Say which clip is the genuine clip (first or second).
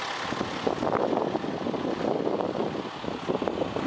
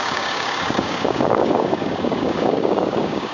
first